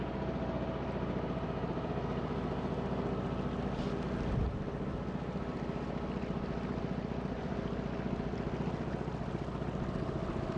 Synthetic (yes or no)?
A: no